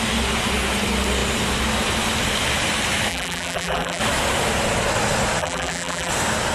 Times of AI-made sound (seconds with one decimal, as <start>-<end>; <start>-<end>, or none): 3.1-4.0; 5.4-6.1